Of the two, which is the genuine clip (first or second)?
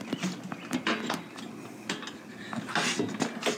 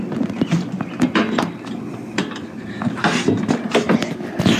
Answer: first